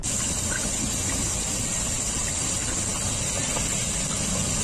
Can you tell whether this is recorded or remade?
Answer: recorded